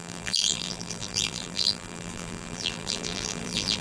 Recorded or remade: remade